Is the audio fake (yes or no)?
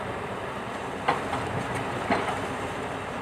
yes